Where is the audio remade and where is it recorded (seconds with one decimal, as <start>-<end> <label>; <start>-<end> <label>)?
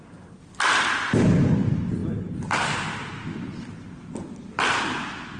0.0-5.4 recorded